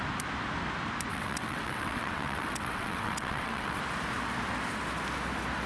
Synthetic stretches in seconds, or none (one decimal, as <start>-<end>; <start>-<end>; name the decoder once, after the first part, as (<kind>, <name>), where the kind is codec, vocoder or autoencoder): 1.1-3.8 (vocoder, WaveNeXt)